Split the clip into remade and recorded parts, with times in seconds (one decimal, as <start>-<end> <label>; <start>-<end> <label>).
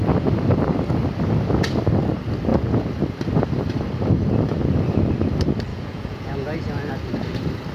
0.0-5.7 recorded; 5.7-6.9 remade; 6.9-7.7 recorded